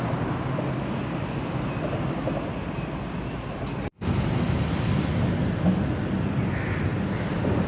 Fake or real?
real